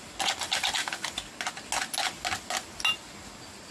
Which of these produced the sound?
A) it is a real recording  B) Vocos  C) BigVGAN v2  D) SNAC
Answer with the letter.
A